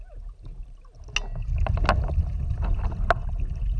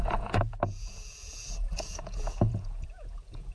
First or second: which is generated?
second